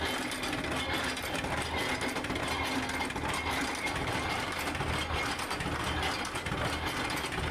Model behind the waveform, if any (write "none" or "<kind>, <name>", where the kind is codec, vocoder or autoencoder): none